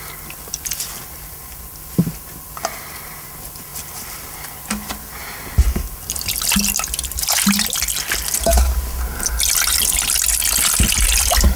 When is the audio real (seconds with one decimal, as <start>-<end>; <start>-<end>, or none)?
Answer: 0.0-11.6